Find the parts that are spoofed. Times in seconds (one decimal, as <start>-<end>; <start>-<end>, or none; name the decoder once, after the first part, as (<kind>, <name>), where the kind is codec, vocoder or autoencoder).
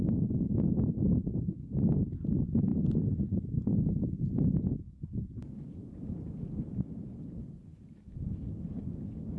none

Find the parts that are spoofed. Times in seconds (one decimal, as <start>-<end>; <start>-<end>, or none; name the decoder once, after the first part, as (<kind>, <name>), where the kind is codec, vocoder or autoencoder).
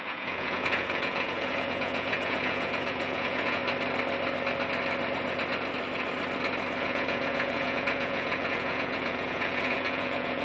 0.0-3.6 (vocoder, Vocos); 6.8-10.4